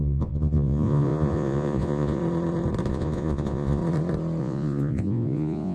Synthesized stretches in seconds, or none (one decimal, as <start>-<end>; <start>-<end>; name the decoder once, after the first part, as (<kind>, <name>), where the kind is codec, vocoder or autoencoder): 0.0-2.2 (vocoder, Vocos); 2.9-3.8; 4.4-5.7